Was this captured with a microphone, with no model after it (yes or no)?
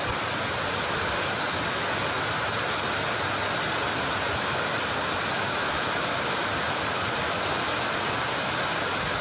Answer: yes